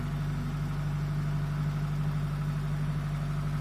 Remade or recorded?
recorded